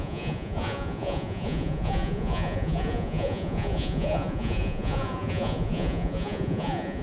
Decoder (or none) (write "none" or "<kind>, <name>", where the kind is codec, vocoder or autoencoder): vocoder, Vocos